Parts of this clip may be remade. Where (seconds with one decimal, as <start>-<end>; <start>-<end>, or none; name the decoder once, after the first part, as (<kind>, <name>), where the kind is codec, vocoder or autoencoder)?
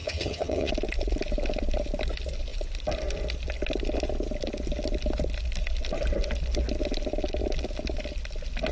0.0-0.7 (vocoder, HiFi-GAN)